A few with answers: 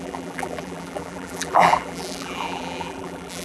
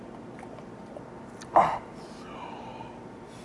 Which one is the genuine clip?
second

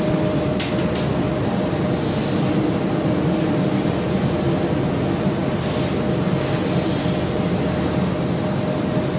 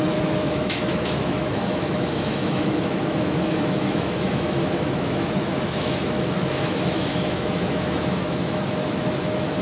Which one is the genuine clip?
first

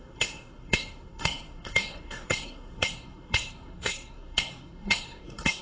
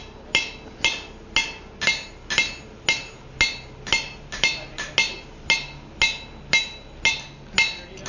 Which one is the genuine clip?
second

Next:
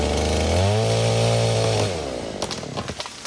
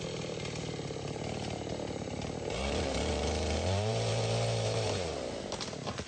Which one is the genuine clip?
first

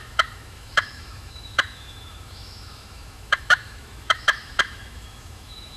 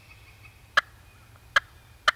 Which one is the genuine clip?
second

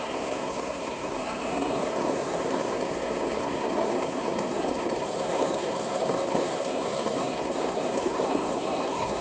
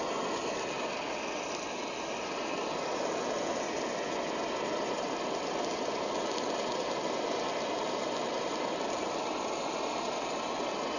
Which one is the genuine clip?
second